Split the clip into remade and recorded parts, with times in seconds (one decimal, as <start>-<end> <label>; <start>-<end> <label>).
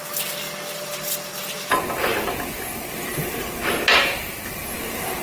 0.0-5.2 recorded